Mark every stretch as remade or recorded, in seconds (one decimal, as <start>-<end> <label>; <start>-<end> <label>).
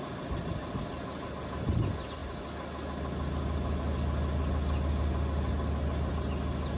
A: 0.0-6.8 recorded